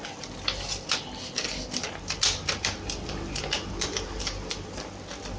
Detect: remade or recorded recorded